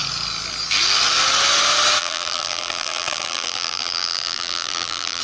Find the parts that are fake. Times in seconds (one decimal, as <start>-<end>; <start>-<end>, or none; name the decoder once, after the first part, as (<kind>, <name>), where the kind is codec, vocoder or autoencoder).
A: 2.0-5.2 (vocoder, BigVGAN v2)

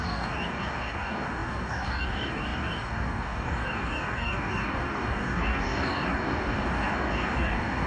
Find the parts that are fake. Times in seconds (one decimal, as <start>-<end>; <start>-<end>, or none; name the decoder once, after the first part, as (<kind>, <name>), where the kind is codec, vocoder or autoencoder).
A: 0.0-7.9 (codec, DAC)

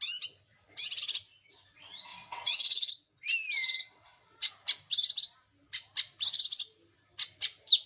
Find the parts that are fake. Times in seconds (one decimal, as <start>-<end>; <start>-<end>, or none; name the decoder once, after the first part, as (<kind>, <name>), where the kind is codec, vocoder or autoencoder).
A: 2.1-2.9 (vocoder, WaveNeXt); 3.6-4.5

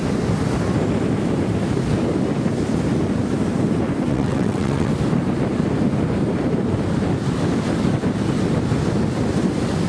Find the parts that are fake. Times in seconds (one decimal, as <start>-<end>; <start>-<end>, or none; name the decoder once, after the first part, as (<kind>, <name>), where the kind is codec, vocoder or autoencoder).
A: 4.1-4.9 (vocoder, WaveNeXt)

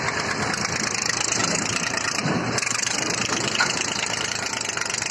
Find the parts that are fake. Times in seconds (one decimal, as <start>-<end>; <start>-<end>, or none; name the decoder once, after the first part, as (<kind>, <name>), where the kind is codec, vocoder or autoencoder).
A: 1.4-4.5 (vocoder, BigVGAN v2)

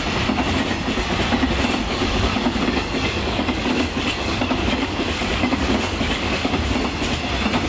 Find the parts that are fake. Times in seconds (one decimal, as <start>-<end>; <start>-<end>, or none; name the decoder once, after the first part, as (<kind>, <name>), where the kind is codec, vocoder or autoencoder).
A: 1.9-6.5 (codec, DAC)

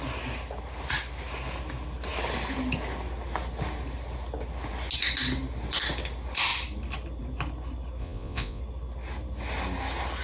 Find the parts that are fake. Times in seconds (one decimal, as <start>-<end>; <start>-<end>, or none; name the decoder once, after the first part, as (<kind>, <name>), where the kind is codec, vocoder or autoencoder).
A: 8.0-8.6 (vocoder, Vocos)

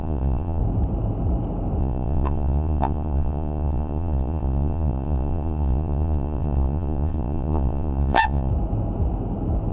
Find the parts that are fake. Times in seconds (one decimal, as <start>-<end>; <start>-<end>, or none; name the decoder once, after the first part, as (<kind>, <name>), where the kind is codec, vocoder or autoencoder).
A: 0.0-0.6 (vocoder, Vocos); 1.8-8.5